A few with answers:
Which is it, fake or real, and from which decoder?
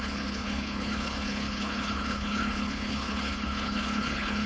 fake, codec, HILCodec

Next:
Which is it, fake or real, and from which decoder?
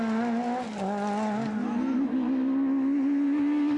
real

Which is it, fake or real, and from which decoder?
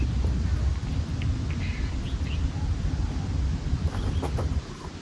real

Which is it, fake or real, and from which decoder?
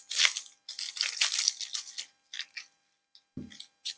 real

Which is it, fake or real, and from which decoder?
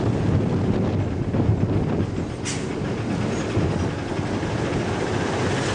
real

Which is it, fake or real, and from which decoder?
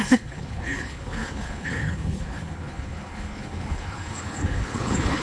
fake, codec, HILCodec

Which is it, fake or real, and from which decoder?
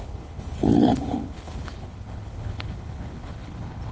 fake, codec, HILCodec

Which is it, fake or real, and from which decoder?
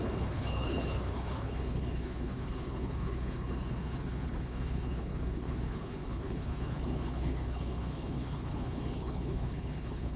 fake, codec, HILCodec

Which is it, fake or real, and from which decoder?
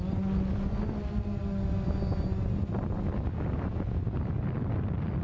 real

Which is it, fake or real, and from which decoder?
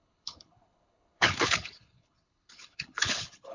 fake, codec, HILCodec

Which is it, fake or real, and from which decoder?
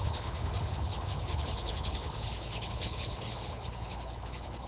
fake, codec, HILCodec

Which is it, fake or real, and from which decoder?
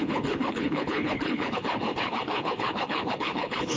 fake, codec, HILCodec